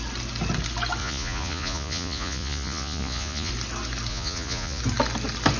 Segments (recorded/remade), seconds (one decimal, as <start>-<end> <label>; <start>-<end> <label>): 0.0-1.0 recorded; 1.0-3.5 remade; 3.5-4.1 recorded; 4.1-4.8 remade; 4.8-5.6 recorded